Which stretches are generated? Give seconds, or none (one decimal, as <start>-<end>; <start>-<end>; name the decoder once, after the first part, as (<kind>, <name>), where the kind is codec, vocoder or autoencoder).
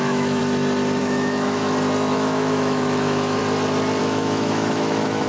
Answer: 0.0-0.4 (autoencoder, DAC-VAE); 1.0-1.6; 2.1-3.4; 4.0-5.3